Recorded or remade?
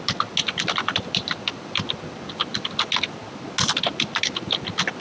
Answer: recorded